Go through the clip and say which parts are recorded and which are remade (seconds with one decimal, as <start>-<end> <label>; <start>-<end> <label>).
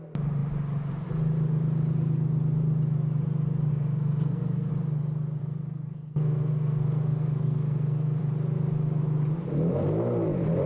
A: 0.0-3.7 recorded; 3.7-4.7 remade; 4.7-5.4 recorded; 5.4-8.2 remade; 8.2-10.7 recorded